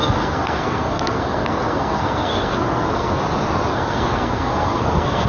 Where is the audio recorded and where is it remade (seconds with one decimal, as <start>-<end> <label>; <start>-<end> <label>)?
0.0-3.2 remade; 3.2-3.7 recorded; 3.7-5.3 remade